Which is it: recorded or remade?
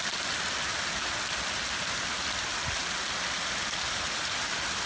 recorded